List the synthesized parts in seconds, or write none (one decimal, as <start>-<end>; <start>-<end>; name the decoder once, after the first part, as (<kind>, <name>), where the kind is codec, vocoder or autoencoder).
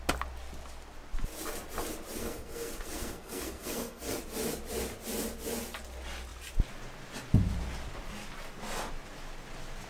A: 2.2-4.2 (codec, SNAC)